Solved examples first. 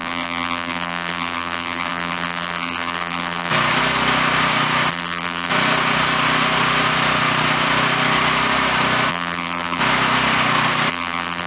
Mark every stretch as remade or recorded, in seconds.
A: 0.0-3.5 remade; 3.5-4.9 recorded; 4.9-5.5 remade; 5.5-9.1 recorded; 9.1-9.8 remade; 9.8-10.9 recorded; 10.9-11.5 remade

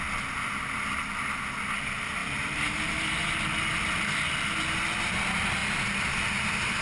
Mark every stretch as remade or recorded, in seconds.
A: 0.0-2.2 recorded; 2.2-4.5 remade; 4.5-6.8 recorded

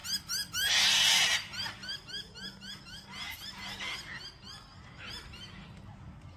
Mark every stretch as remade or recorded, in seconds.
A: 0.0-6.4 recorded

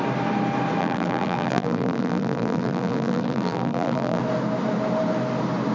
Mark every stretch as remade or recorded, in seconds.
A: 0.0-0.8 recorded; 0.8-4.2 remade; 4.2-5.7 recorded